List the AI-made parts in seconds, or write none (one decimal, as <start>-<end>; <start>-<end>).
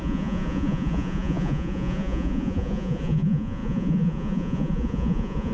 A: 0.0-5.5